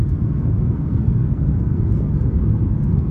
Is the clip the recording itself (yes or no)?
no